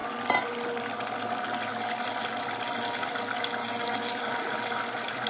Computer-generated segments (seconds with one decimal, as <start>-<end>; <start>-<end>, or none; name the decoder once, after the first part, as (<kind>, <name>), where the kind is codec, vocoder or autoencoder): 3.6-4.3 (codec, DAC)